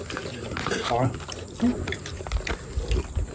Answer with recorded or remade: recorded